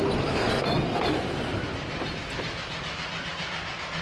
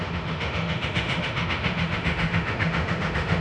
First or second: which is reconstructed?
second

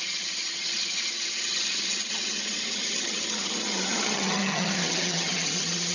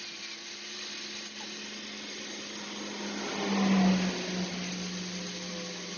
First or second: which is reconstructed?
first